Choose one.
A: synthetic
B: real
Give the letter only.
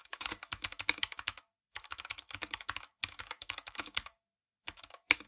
A